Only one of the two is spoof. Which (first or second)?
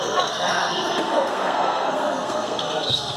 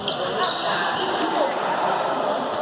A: first